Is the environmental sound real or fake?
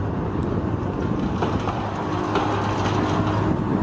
real